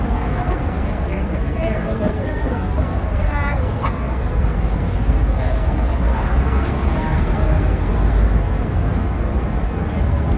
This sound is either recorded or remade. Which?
remade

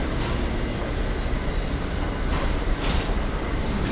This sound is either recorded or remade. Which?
recorded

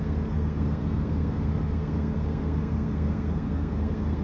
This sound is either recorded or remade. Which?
remade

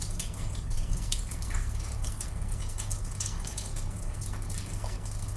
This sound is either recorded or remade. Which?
remade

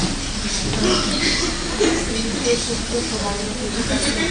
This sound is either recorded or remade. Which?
recorded